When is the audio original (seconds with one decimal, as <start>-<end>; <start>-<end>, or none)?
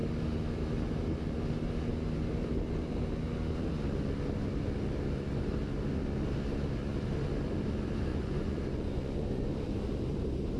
0.0-8.1; 9.5-10.6